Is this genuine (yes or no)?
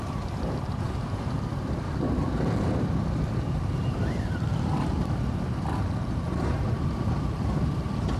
no